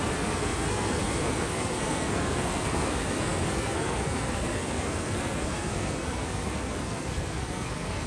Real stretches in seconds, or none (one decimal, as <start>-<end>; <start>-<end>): none